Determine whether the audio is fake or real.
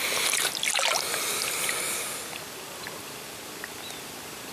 real